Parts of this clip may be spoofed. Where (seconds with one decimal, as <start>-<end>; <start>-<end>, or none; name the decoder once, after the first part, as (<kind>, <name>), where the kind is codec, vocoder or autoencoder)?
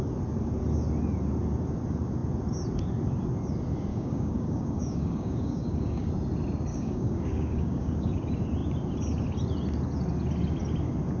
3.9-6.1 (codec, DAC); 6.7-8.1